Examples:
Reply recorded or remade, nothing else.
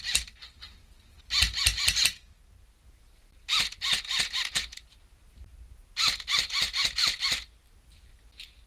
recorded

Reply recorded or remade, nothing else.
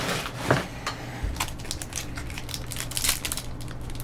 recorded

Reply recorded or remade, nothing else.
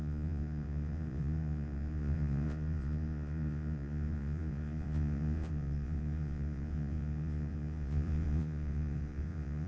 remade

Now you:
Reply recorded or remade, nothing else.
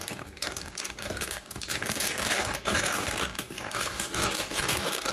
remade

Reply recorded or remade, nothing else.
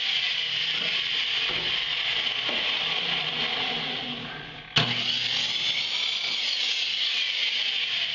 recorded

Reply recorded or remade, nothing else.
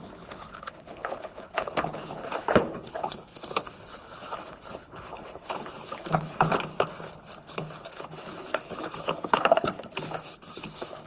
remade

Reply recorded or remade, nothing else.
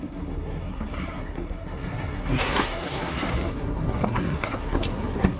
remade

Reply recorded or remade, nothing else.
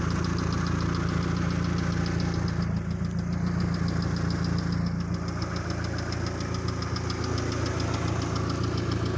recorded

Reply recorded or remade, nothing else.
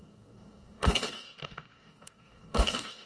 remade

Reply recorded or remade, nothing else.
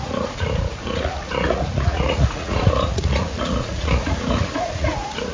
remade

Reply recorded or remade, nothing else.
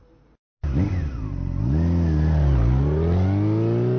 recorded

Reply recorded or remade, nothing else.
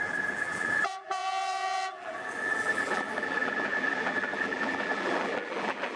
remade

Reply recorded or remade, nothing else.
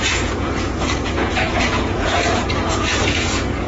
remade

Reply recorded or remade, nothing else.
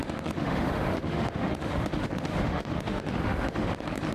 remade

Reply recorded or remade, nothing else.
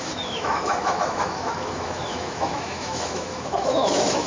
remade